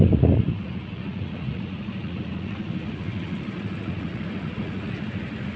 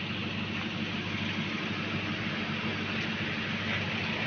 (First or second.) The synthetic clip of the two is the first